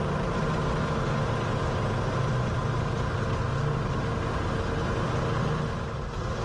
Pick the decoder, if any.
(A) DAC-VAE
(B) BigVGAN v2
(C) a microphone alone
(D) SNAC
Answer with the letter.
C